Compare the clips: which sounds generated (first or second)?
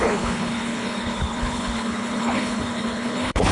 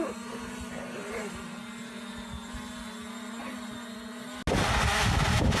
first